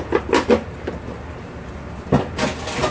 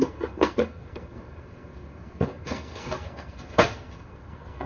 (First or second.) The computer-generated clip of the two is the second